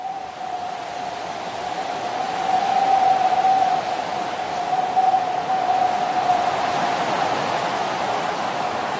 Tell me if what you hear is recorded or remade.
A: recorded